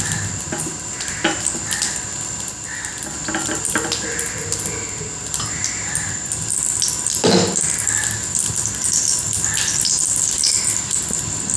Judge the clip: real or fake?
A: real